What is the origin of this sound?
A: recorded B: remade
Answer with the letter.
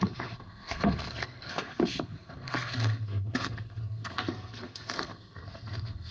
B